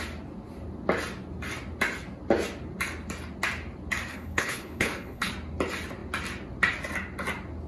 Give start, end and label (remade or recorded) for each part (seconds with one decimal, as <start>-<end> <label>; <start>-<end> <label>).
0.0-4.1 recorded; 4.1-5.3 remade; 5.3-7.7 recorded